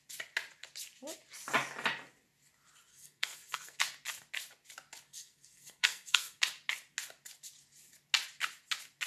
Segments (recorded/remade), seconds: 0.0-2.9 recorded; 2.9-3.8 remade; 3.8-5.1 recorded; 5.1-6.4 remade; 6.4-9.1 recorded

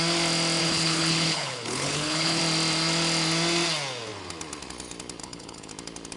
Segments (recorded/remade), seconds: 0.0-0.6 recorded; 0.6-2.4 remade; 2.4-5.2 recorded; 5.2-5.7 remade; 5.7-6.2 recorded

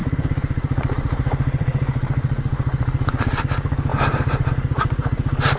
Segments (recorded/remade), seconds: 0.0-3.4 remade; 3.4-3.9 recorded; 3.9-4.5 remade; 4.5-5.6 recorded